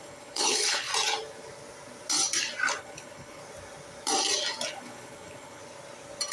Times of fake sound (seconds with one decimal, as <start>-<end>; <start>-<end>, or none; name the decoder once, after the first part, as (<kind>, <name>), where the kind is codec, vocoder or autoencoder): 0.0-0.9 (codec, HILCodec); 2.8-3.4; 4.7-5.6

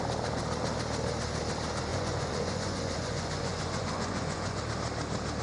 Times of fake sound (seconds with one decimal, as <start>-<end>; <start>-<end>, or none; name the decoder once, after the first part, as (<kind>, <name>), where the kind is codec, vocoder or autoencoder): 1.9-4.6 (vocoder, Vocos)